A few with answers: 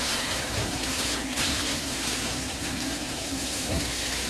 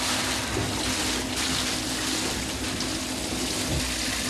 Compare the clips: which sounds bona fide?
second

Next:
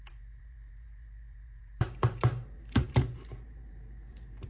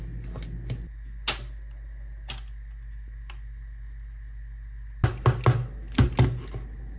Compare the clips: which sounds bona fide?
second